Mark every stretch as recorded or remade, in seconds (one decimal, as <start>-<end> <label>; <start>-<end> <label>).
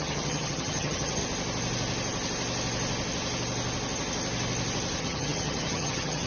0.0-1.2 remade; 1.2-5.0 recorded; 5.0-6.3 remade